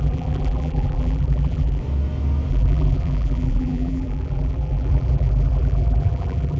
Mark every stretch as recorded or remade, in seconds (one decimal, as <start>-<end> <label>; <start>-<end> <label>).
0.0-1.8 remade; 1.8-2.5 recorded; 2.5-6.6 remade